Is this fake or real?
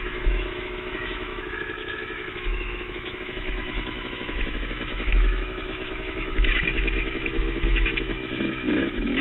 fake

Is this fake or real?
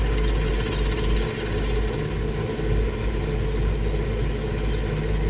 real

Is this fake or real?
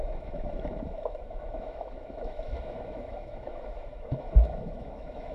fake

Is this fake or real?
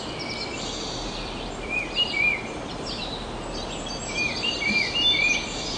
real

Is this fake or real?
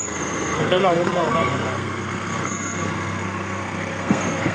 fake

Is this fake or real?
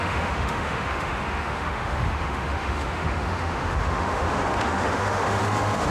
fake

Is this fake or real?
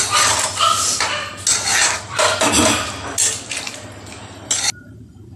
real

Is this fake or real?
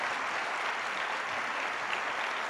real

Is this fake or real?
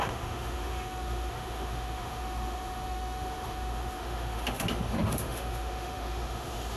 fake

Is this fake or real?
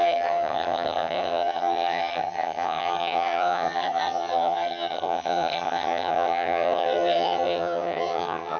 fake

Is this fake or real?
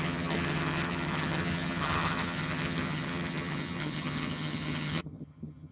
fake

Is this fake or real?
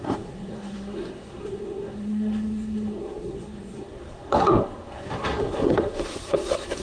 fake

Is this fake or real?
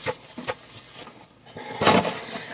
real